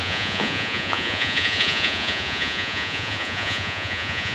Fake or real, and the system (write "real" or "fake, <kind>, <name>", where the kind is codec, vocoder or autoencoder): fake, vocoder, Vocos